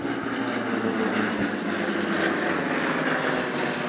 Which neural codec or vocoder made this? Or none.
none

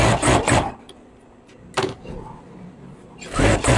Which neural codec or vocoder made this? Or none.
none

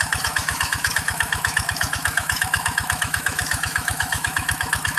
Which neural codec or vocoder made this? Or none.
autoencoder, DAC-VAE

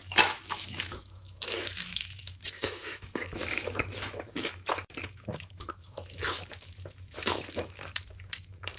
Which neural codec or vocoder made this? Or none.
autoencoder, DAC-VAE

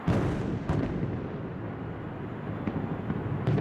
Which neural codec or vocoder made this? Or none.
none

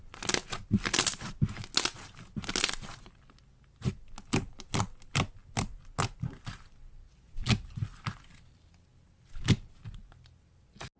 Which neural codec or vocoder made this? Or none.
none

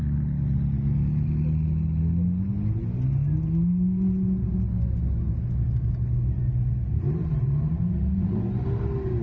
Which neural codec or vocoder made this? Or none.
none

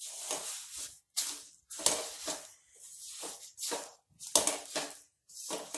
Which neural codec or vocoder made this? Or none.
none